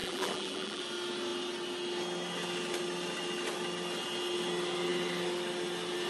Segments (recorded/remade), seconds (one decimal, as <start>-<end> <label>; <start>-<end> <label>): 0.0-0.8 remade; 0.8-6.1 recorded